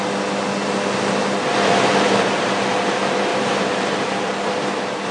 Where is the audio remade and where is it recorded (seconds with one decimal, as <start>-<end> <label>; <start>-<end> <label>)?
0.0-1.2 recorded; 1.2-2.9 remade; 2.9-3.3 recorded; 3.3-4.4 remade; 4.4-5.1 recorded